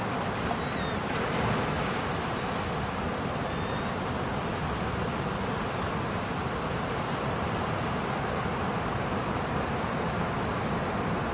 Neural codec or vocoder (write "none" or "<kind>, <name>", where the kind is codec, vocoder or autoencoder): none